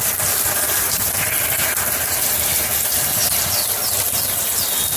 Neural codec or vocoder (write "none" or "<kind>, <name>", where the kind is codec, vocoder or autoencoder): none